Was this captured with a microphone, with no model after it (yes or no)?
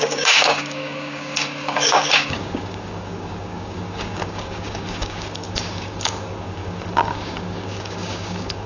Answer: no